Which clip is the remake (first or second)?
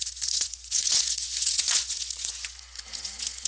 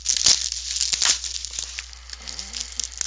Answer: first